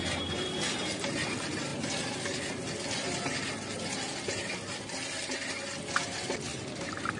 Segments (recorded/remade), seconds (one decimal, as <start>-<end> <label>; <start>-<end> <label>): 0.0-7.2 recorded